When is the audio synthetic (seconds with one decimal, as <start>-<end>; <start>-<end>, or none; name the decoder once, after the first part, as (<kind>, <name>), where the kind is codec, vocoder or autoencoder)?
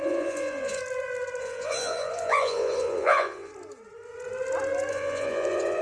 0.0-0.8 (vocoder, Vocos); 1.4-3.5; 4.9-5.8